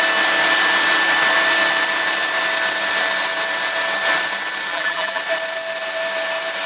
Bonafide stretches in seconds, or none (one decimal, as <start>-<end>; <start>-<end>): 0.0-4.7; 5.2-6.7